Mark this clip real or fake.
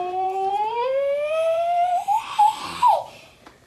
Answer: fake